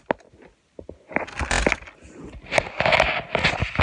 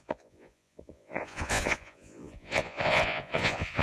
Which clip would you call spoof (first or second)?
second